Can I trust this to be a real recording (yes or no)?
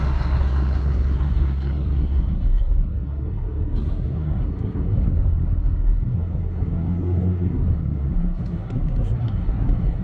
no